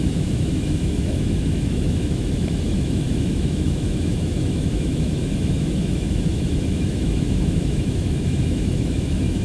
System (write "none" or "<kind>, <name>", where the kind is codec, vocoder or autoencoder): autoencoder, DAC-VAE